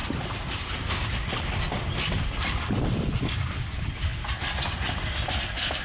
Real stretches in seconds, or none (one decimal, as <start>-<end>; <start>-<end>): 4.1-4.9